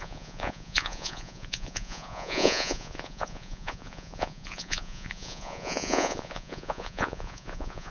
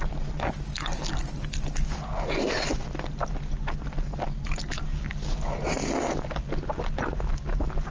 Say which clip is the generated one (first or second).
first